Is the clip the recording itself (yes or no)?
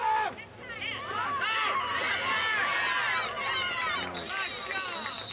yes